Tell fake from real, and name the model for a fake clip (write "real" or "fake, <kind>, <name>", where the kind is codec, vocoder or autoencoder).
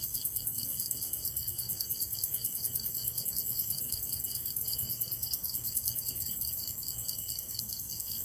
fake, codec, SNAC